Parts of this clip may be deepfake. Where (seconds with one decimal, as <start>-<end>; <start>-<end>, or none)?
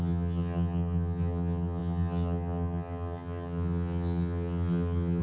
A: 0.0-5.2